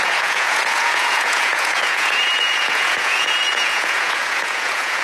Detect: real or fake fake